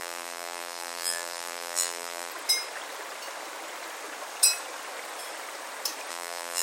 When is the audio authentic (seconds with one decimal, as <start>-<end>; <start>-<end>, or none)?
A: 2.3-6.1